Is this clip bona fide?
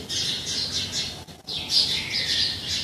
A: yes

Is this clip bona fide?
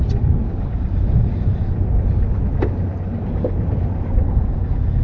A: yes